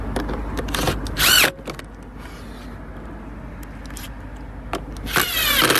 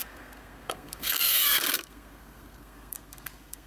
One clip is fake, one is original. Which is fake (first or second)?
second